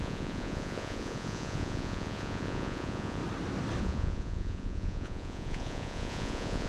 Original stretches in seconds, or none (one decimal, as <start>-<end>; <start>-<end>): 3.2-3.8